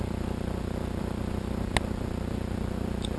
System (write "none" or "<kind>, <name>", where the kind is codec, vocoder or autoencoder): none